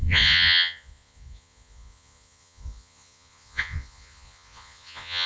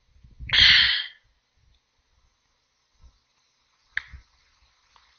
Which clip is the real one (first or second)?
second